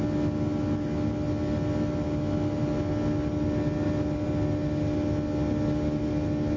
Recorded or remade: recorded